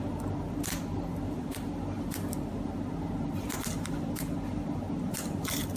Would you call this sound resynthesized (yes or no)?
no